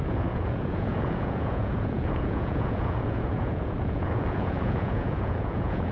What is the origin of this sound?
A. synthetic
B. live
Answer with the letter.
A